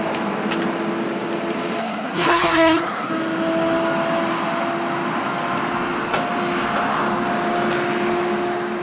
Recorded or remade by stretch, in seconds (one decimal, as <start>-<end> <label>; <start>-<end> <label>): 0.0-1.8 recorded; 1.8-3.1 remade; 3.1-8.8 recorded